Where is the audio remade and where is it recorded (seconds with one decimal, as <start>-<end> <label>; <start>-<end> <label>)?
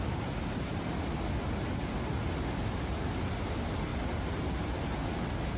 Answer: 0.0-5.6 recorded